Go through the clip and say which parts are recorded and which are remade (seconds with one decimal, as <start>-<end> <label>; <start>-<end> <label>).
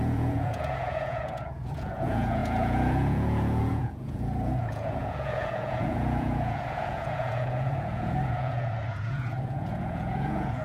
0.0-10.6 remade